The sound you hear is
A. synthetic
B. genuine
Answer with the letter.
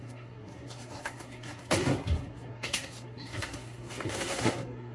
A